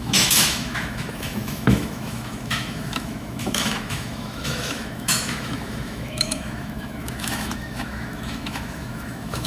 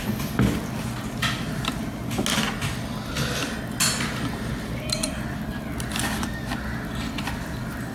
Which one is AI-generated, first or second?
first